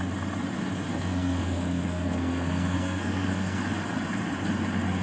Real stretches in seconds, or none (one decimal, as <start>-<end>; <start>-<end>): 0.0-0.9; 3.6-5.0